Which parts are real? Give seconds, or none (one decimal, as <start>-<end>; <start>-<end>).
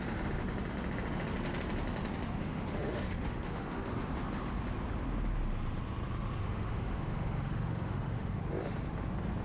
0.0-2.4; 3.9-6.4; 8.4-9.4